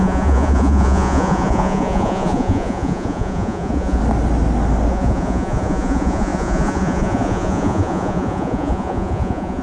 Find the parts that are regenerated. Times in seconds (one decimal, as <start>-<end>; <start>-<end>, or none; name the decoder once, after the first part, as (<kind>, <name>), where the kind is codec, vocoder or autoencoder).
0.0-4.0 (vocoder, Vocos); 4.9-9.6